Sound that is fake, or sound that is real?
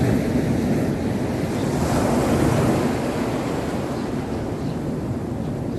real